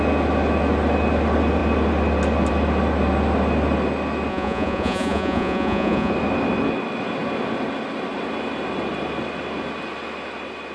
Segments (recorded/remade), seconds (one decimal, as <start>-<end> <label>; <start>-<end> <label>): 0.0-4.3 recorded; 4.3-6.1 remade; 6.1-10.7 recorded